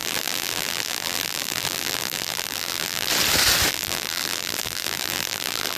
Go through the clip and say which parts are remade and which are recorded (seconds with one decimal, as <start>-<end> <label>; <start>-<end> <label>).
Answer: 0.0-3.1 remade; 3.1-3.7 recorded; 3.7-5.8 remade